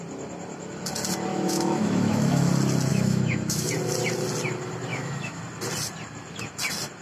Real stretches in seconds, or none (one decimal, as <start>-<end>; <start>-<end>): 0.0-1.3; 2.5-2.9; 3.7-4.9; 5.4-7.0